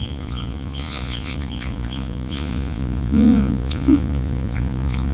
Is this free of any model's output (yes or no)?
no